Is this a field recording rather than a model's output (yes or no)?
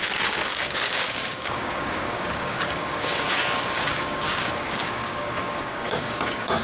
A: no